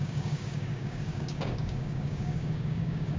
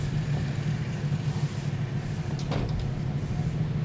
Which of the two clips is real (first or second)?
second